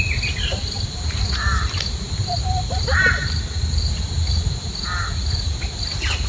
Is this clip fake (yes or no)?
no